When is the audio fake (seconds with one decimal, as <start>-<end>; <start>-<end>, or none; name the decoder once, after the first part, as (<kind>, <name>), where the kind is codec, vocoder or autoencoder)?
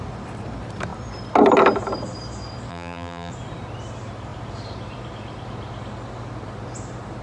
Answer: 2.7-3.3 (vocoder, BigVGAN v2)